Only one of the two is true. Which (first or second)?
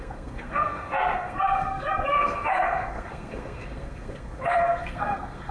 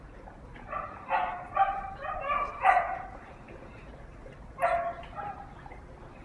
second